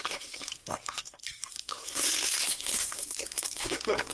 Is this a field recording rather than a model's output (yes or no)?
no